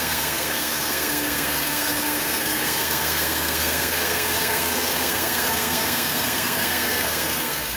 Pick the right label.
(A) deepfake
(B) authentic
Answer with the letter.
A